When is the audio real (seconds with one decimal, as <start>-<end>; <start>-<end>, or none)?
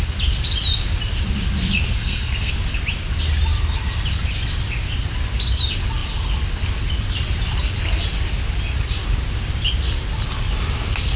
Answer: 0.0-2.0; 2.5-11.2